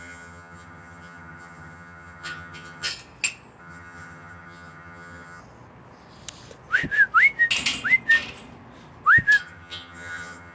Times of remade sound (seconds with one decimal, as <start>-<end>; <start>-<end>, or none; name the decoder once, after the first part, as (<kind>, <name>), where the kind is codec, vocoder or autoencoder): 0.0-2.9 (vocoder, HiFi-GAN); 3.6-5.4; 9.4-10.5